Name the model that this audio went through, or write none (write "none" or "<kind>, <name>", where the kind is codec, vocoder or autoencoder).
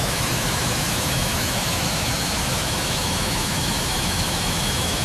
autoencoder, DAC-VAE